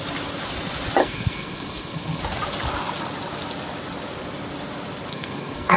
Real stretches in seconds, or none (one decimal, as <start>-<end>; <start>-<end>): 0.0-1.0; 2.2-5.1